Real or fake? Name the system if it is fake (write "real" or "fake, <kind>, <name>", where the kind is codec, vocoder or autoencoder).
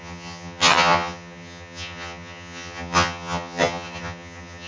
fake, vocoder, HiFi-GAN